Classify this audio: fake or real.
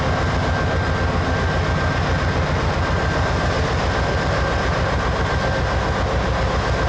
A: real